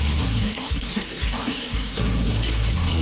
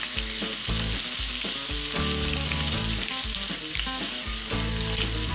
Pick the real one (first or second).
second